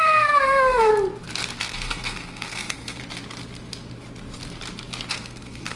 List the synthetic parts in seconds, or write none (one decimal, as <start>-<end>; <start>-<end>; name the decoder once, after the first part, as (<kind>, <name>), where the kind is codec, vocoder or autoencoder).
0.0-0.9 (codec, SNAC); 1.6-3.0; 5.1-5.8